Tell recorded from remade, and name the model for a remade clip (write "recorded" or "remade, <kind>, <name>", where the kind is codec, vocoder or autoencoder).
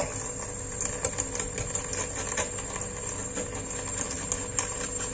recorded